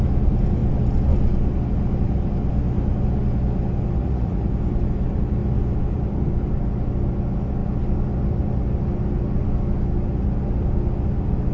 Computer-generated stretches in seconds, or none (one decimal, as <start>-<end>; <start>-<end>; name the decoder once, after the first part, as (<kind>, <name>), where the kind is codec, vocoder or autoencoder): 4.0-4.5 (vocoder, Vocos)